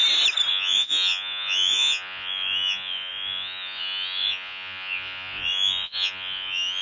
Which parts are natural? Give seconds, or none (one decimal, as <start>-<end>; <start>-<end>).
0.0-0.5